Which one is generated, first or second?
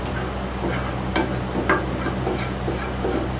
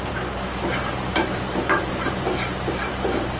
second